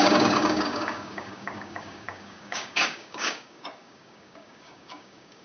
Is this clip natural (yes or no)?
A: no